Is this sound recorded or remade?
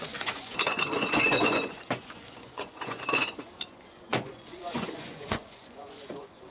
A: remade